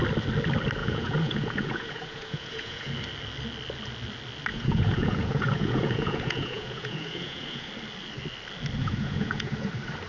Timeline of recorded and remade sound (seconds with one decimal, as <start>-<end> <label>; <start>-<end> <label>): 0.0-0.8 recorded; 0.8-2.9 remade; 2.9-4.5 recorded; 4.5-7.7 remade; 7.7-8.8 recorded; 8.8-9.7 remade; 9.7-10.1 recorded